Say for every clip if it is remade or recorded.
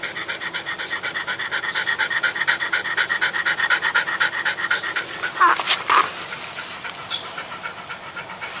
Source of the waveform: recorded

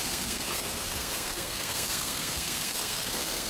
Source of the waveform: remade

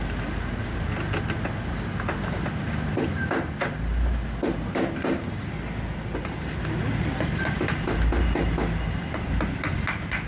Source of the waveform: recorded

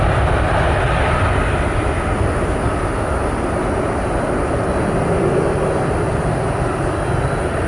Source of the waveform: recorded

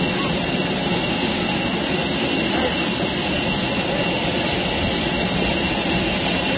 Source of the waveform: recorded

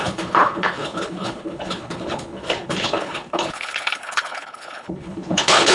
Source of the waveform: remade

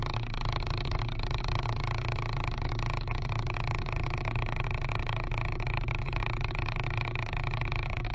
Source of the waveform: remade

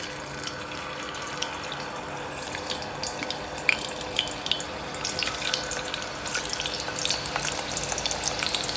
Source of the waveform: recorded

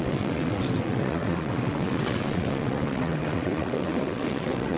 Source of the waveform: remade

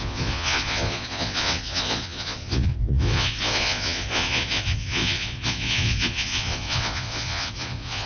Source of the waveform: remade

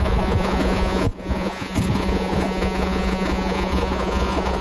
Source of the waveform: remade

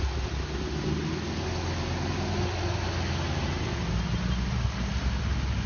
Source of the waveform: recorded